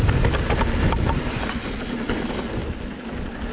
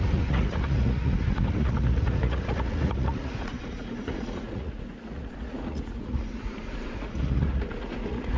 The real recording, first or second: first